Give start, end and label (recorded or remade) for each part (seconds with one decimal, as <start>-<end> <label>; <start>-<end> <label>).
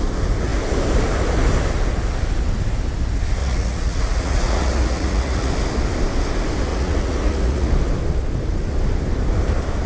0.0-3.4 recorded; 3.4-5.5 remade; 5.5-6.7 recorded; 6.7-7.7 remade; 7.7-9.9 recorded